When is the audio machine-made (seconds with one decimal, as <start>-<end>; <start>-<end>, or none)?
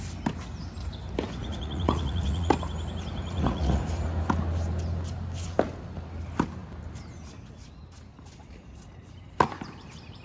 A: 1.4-2.5; 3.2-3.8